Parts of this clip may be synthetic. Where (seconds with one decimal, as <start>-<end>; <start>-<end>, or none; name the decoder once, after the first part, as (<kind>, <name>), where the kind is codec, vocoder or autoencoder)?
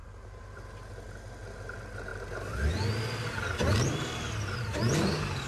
0.0-0.6 (vocoder, BigVGAN v2)